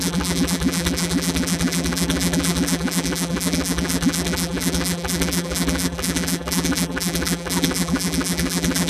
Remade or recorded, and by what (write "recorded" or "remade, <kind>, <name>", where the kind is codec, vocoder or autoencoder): remade, vocoder, BigVGAN v2